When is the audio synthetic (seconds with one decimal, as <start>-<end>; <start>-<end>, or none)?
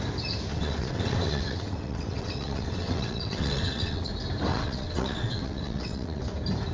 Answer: 0.5-4.1; 4.5-6.2